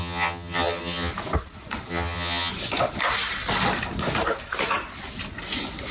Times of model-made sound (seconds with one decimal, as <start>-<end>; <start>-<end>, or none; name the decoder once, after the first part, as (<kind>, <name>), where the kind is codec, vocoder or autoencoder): 0.0-1.1 (vocoder, HiFi-GAN); 1.9-2.5